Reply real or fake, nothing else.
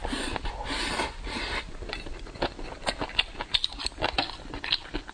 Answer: real